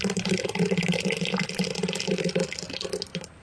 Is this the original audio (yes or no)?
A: yes